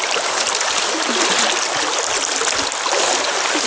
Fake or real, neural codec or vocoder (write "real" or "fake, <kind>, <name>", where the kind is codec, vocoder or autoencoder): real